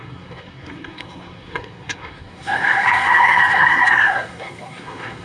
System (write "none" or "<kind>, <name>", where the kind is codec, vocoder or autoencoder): codec, SNAC